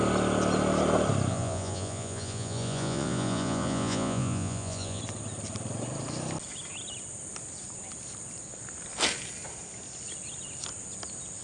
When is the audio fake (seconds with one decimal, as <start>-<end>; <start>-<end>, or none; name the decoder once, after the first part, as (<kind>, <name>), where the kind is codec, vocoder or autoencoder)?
1.3-5.0 (vocoder, Vocos)